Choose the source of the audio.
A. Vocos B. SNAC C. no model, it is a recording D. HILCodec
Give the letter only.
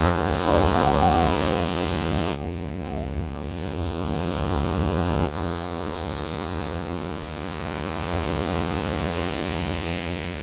A